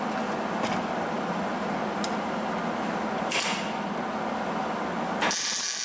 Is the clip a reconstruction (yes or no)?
no